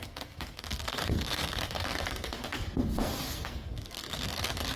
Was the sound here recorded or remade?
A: remade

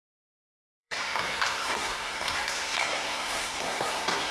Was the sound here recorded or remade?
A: remade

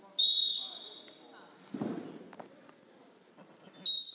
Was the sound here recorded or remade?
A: recorded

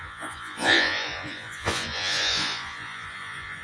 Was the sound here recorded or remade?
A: remade